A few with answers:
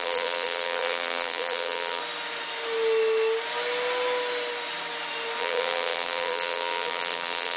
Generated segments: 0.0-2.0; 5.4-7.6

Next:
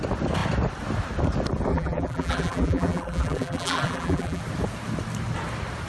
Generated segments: 1.7-4.4

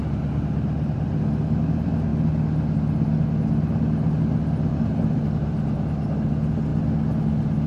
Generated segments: 4.7-5.2

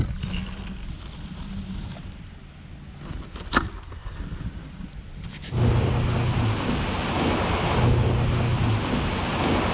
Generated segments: 4.0-5.9

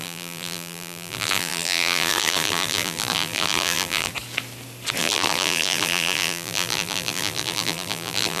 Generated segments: 0.0-4.1; 5.0-8.4

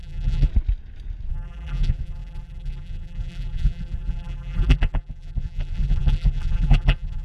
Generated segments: 0.0-0.5; 1.3-7.2

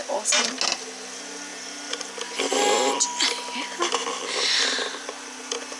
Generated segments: 1.5-2.1

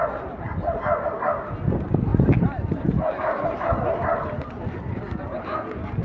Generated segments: 2.1-5.4